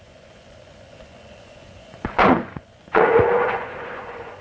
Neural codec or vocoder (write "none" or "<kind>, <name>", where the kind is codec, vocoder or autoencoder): vocoder, Vocos